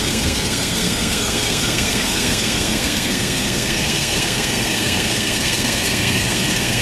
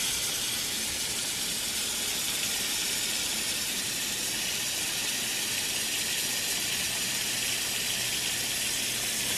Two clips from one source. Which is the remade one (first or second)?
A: first